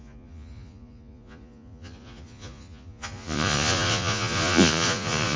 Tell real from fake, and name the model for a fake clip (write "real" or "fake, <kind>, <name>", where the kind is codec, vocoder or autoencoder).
fake, vocoder, Vocos